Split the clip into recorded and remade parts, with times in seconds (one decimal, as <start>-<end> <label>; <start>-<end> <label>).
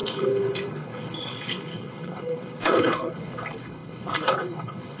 0.0-5.0 remade